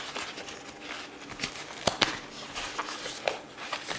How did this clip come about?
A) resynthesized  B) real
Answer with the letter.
B